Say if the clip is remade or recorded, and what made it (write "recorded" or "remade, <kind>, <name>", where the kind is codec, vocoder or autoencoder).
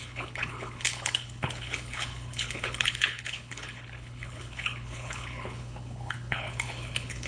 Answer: remade, codec, HILCodec